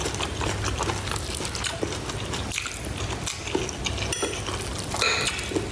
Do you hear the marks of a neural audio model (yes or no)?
no